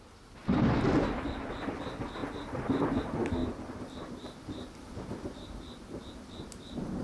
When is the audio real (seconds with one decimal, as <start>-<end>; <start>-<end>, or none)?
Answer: 0.0-0.4; 1.8-3.4; 6.1-7.0